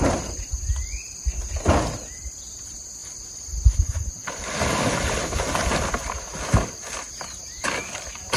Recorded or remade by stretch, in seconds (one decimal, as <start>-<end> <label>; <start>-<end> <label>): 0.0-8.4 recorded